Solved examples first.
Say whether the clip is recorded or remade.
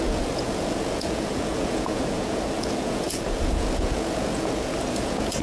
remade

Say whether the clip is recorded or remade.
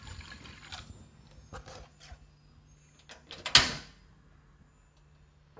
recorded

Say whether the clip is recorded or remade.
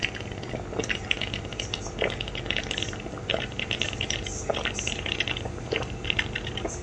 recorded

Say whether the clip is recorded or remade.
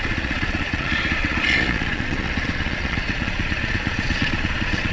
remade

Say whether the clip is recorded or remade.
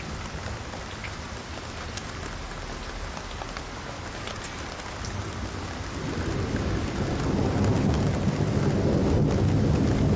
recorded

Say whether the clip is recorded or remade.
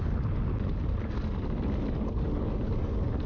recorded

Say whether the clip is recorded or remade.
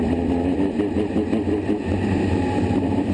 recorded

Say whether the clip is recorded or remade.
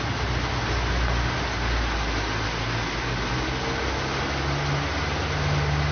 recorded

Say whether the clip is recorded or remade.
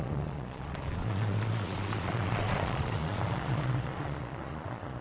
remade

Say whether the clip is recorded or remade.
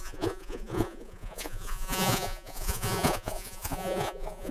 remade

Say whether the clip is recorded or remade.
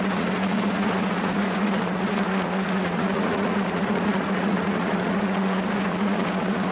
remade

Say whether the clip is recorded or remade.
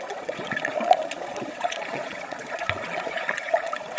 remade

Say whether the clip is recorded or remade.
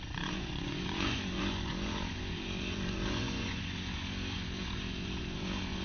remade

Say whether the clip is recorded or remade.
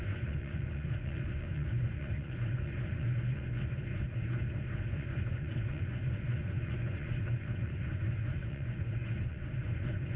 remade